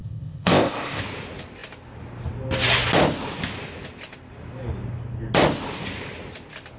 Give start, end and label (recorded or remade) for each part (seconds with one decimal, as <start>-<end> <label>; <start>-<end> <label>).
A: 0.0-1.0 remade; 1.0-6.8 recorded